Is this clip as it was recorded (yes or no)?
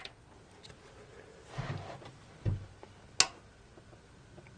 yes